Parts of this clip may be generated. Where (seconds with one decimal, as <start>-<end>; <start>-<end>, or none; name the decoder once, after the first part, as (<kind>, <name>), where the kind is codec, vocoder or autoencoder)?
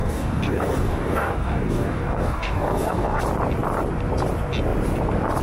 0.0-3.2 (codec, DAC)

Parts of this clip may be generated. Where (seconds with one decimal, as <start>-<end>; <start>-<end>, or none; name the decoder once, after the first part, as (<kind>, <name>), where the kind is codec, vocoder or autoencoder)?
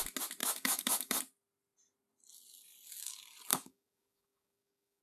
0.4-1.2 (codec, DAC); 3.5-5.0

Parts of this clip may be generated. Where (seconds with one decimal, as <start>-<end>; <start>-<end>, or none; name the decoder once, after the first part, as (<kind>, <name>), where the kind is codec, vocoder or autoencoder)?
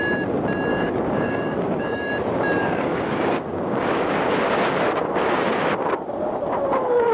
0.7-2.1 (codec, DAC); 2.6-4.6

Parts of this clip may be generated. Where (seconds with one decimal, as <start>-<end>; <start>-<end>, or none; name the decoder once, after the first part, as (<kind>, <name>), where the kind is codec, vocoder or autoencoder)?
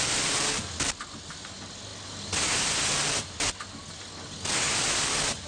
none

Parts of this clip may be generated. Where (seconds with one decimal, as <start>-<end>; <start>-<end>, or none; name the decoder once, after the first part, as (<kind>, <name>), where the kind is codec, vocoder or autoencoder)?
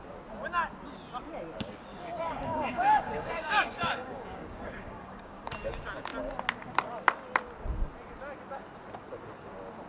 1.9-5.5 (codec, DAC)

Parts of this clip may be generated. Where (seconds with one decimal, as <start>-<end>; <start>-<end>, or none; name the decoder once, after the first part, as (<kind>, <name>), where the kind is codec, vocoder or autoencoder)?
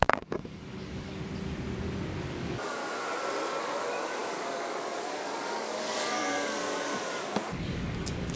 0.0-1.2 (codec, DAC); 2.2-2.8; 3.6-8.4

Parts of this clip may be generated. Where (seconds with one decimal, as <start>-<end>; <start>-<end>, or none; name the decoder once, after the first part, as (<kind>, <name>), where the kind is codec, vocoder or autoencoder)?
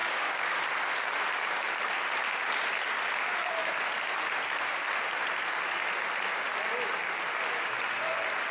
0.0-0.6 (codec, DAC)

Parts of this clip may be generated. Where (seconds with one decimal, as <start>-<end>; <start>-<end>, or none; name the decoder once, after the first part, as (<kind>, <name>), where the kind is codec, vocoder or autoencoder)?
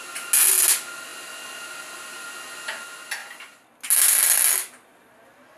none